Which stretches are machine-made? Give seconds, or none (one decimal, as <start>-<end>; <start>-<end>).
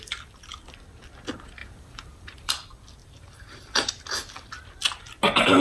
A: 1.6-2.5; 3.0-3.9